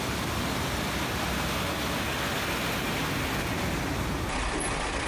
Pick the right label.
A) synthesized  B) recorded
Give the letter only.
B